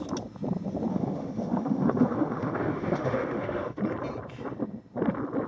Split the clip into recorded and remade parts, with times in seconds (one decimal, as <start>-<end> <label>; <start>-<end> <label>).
0.0-0.9 recorded; 0.9-3.8 remade; 3.8-5.5 recorded